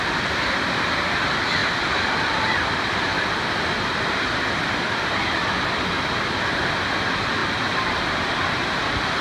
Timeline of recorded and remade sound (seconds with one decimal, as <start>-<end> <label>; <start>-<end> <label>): 0.0-1.6 recorded; 1.6-5.2 remade; 5.2-9.2 recorded